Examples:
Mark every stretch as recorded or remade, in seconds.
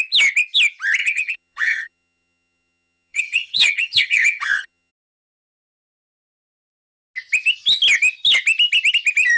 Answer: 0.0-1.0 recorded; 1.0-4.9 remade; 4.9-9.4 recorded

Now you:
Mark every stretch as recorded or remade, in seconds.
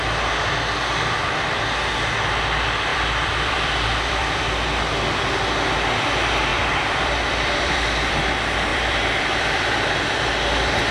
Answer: 0.0-2.9 recorded; 2.9-4.4 remade; 4.4-6.5 recorded; 6.5-8.2 remade; 8.2-8.7 recorded; 8.7-9.9 remade; 9.9-10.9 recorded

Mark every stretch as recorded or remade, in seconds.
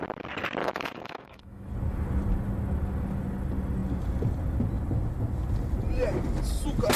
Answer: 0.0-0.6 recorded; 0.6-1.7 remade; 1.7-7.0 recorded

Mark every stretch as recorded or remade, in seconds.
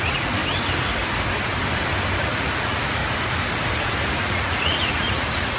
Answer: 0.0-0.4 remade; 0.4-2.2 recorded; 2.2-3.0 remade; 3.0-3.8 recorded; 3.8-5.6 remade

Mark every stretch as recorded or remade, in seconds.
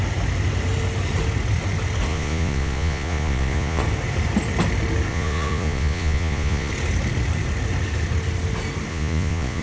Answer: 0.0-2.1 recorded; 2.1-3.8 remade; 3.8-5.1 recorded; 5.1-6.7 remade; 6.7-8.9 recorded; 8.9-9.6 remade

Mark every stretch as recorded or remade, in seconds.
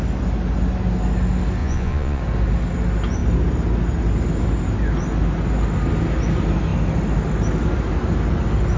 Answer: 0.0-1.6 recorded; 1.6-2.2 remade; 2.2-8.8 recorded